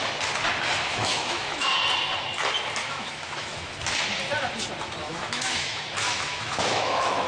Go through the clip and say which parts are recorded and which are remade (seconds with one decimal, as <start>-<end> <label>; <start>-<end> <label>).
0.0-0.9 recorded; 0.9-1.8 remade; 1.8-2.8 recorded; 2.8-3.7 remade; 3.7-5.0 recorded; 5.0-7.3 remade